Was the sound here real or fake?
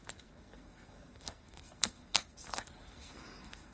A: fake